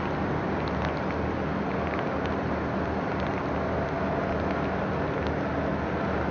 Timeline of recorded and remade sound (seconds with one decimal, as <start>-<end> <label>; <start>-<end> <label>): 0.0-6.3 recorded